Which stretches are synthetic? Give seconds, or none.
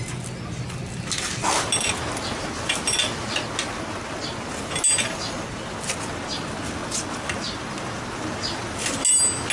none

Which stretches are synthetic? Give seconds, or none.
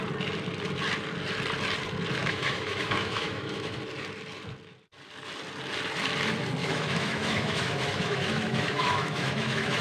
2.2-3.8 (autoencoder, DAC-VAE); 6.6-9.8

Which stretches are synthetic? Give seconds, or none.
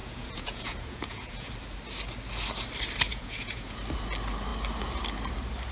0.0-1.5 (vocoder, Vocos); 3.1-3.8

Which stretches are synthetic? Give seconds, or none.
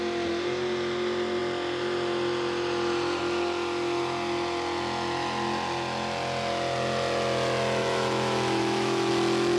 7.8-9.1 (autoencoder, DAC-VAE)